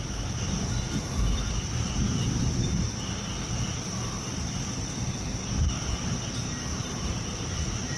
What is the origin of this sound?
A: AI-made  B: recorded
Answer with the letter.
A